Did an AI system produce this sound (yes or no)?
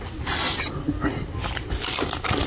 no